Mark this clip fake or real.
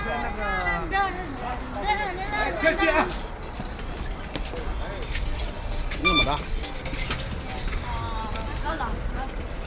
real